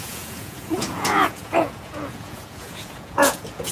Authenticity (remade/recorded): remade